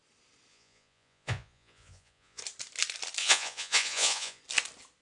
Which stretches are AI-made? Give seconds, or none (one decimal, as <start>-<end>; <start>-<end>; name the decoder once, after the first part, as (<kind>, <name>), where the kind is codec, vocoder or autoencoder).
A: 0.5-2.4 (vocoder, Vocos); 3.2-4.4